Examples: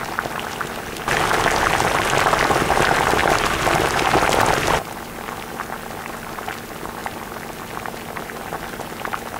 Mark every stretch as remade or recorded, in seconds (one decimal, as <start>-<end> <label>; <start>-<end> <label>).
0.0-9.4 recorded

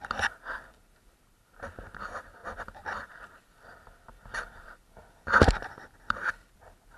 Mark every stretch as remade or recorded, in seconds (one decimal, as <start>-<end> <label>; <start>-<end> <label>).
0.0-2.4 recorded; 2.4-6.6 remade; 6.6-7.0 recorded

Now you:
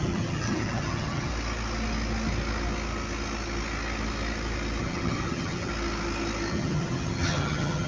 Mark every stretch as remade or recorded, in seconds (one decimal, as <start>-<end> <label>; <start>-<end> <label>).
0.0-1.3 remade; 1.3-4.8 recorded; 4.8-5.7 remade; 5.7-6.5 recorded; 6.5-7.9 remade

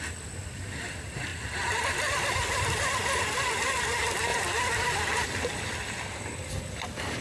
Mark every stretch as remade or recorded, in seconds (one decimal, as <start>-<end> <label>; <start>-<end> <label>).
0.0-1.3 recorded; 1.3-2.2 remade; 2.2-4.3 recorded; 4.3-6.5 remade; 6.5-7.2 recorded

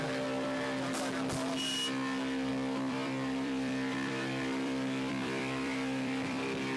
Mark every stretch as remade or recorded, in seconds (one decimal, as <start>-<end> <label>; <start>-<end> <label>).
0.0-2.5 recorded; 2.5-6.8 remade

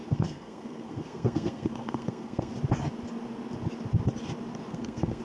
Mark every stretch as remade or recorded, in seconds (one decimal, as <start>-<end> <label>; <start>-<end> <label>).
0.0-2.5 remade; 2.5-4.7 recorded; 4.7-5.2 remade

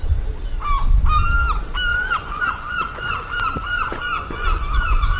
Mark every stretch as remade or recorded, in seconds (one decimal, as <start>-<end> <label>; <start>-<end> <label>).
0.0-1.9 recorded; 1.9-5.2 remade

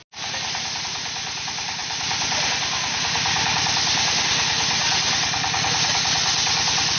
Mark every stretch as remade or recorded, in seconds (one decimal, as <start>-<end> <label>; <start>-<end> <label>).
0.0-1.8 recorded; 1.8-2.5 remade; 2.5-7.0 recorded